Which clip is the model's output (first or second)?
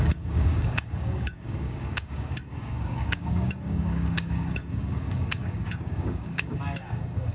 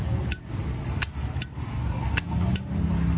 first